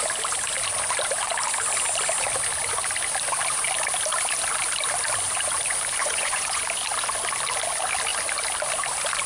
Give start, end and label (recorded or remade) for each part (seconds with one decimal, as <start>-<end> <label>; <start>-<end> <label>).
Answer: 0.0-6.0 recorded; 6.0-6.6 remade; 6.6-9.3 recorded